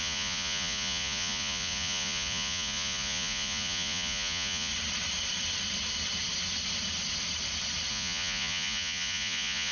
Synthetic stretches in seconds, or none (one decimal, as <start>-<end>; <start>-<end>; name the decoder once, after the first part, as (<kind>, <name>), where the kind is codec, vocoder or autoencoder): 0.0-4.7 (vocoder, Vocos); 7.9-9.7